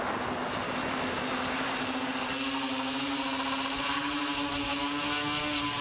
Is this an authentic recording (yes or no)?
yes